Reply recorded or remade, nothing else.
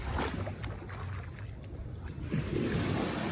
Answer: recorded